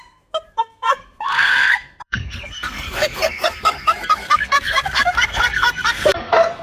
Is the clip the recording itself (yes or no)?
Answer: no